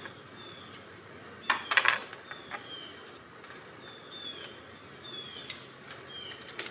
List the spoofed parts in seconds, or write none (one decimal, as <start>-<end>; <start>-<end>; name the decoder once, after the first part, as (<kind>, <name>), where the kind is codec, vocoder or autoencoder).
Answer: none